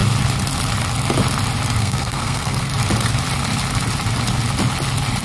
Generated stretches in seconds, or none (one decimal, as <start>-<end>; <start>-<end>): 1.8-2.7

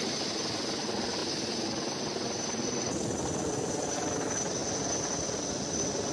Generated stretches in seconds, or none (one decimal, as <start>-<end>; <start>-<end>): none

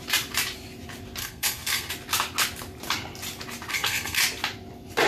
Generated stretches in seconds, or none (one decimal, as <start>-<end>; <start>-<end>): 1.2-1.9; 3.7-4.2

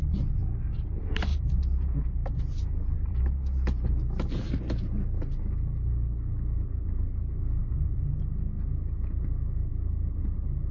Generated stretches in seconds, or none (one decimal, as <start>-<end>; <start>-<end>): 1.3-2.4

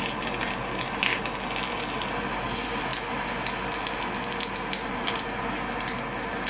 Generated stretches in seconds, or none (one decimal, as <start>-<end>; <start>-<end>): none

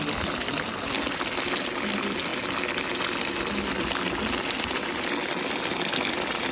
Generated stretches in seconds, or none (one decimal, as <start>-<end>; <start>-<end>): none

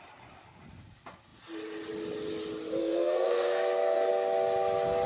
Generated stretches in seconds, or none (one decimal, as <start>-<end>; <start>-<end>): 2.8-4.1